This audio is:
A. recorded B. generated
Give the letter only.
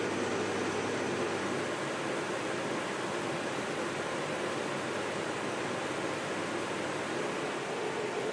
A